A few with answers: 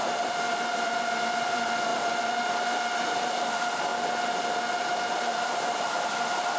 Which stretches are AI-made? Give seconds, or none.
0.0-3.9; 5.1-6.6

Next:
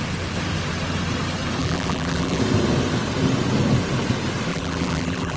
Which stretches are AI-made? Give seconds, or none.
1.6-2.4; 4.5-5.4

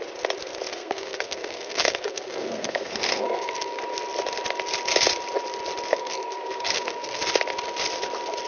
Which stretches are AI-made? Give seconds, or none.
0.7-3.8; 5.9-7.2

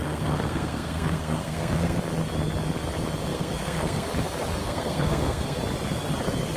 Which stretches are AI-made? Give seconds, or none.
0.0-2.0; 3.3-4.1; 4.6-5.6

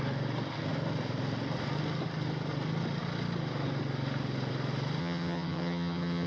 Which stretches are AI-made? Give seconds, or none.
5.0-6.3